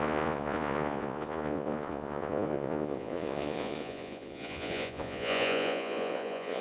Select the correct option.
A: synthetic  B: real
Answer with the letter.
A